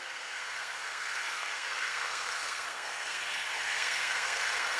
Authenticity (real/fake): fake